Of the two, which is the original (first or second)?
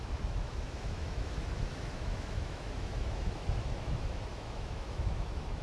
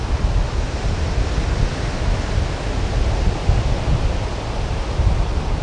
second